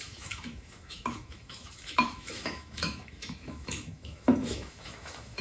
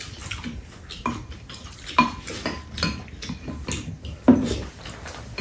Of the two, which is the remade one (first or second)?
first